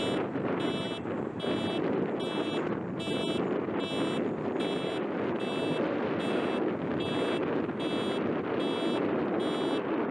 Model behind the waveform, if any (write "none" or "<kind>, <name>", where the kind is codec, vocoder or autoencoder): none